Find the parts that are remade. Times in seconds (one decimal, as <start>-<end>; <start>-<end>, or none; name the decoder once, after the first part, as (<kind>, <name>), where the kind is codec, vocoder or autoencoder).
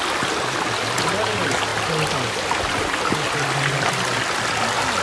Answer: none